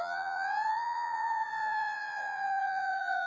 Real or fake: fake